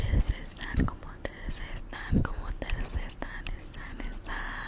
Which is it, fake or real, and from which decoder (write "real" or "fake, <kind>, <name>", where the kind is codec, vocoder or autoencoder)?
real